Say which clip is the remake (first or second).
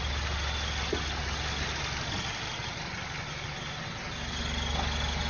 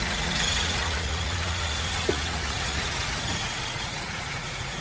second